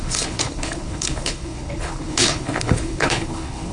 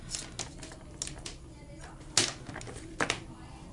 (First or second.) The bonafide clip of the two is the second